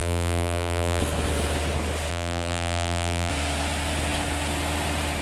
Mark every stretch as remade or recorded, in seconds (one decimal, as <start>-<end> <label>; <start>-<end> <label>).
0.0-1.0 remade; 1.0-2.1 recorded; 2.1-3.3 remade; 3.3-5.2 recorded